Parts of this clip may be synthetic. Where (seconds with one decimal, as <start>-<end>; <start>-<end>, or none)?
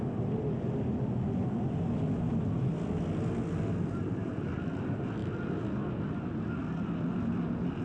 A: none